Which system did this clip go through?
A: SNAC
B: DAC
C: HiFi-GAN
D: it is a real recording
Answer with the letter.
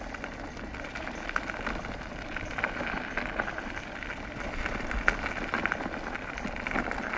D